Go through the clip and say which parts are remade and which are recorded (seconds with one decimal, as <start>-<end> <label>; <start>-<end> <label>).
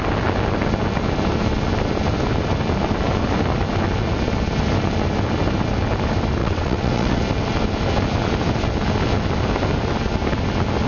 0.0-6.4 recorded; 6.4-7.2 remade; 7.2-10.9 recorded